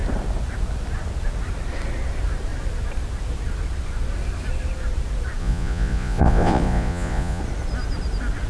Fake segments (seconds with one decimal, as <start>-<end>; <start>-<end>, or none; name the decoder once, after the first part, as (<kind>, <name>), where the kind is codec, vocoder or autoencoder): 5.4-7.4 (vocoder, Vocos)

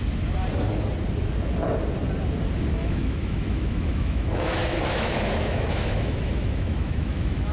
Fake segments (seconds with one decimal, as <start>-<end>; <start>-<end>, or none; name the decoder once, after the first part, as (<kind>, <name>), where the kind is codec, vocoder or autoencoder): 2.8-7.5 (autoencoder, DAC-VAE)

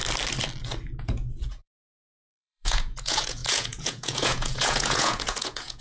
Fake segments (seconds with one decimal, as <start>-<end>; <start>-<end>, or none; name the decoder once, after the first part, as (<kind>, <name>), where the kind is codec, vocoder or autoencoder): 1.0-5.8 (vocoder, Vocos)

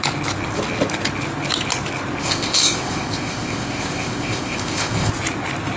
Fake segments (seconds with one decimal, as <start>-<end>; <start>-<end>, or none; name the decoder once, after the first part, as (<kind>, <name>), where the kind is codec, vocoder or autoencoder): 2.2-5.1 (codec, ZipCodec)